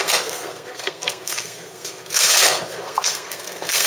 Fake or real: fake